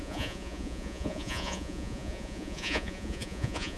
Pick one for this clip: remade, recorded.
remade